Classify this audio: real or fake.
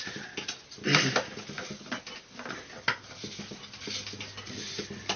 real